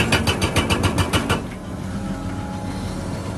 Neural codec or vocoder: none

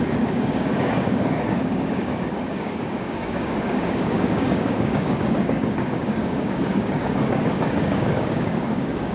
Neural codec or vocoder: codec, DAC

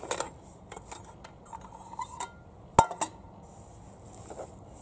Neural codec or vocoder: none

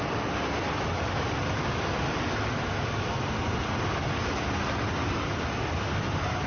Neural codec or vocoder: none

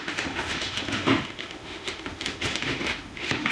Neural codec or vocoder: autoencoder, DAC-VAE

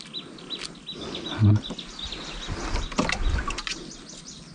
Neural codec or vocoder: none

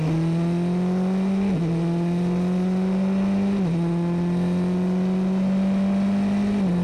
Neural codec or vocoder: none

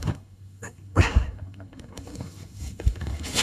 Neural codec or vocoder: codec, SNAC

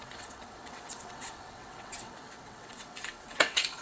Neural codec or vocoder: vocoder, WaveNeXt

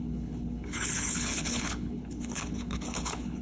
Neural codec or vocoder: codec, HILCodec